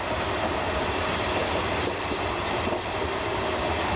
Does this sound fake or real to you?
fake